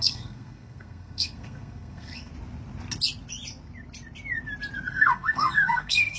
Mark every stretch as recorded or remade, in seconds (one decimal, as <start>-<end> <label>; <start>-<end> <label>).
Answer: 0.0-2.3 remade; 2.3-4.9 recorded; 4.9-6.2 remade